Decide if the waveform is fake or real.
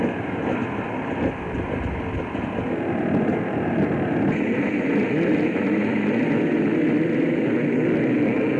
real